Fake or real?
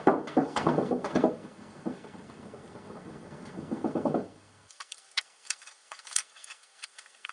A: fake